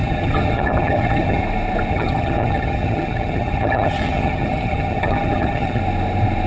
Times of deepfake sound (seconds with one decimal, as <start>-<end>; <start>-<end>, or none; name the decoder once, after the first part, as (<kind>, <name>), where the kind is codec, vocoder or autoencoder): 0.0-1.4 (vocoder, HiFi-GAN); 1.9-5.8